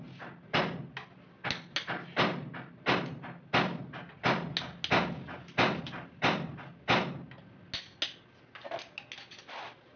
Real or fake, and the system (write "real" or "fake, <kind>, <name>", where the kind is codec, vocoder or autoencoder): real